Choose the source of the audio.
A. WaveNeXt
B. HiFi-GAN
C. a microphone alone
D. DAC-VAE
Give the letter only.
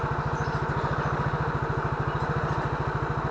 C